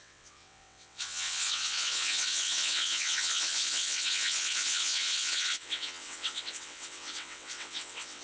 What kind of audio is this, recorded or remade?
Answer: remade